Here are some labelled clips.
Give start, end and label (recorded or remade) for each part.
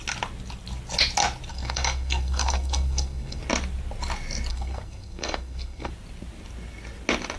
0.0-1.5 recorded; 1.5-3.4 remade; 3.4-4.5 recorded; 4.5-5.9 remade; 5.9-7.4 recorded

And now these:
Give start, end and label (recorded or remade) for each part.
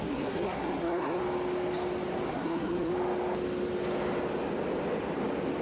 0.0-1.2 remade; 1.2-2.3 recorded; 2.3-2.9 remade; 2.9-5.6 recorded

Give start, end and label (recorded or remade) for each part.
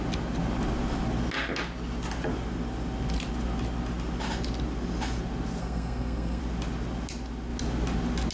0.0-5.6 recorded; 5.6-6.4 remade; 6.4-8.3 recorded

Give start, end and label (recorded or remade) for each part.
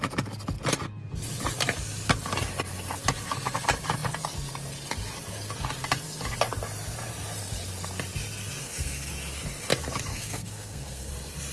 0.0-8.6 recorded; 8.6-9.1 remade; 9.1-10.1 recorded; 10.1-11.1 remade; 11.1-11.5 recorded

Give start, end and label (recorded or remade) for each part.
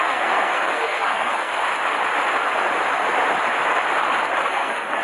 0.0-1.5 remade; 1.5-4.5 recorded; 4.5-5.0 remade